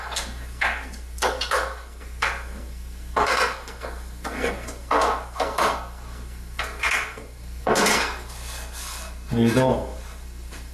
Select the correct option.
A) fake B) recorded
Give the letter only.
A